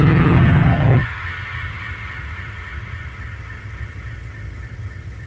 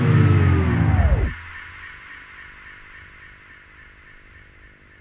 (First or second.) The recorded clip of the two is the second